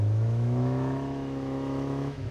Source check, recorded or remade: remade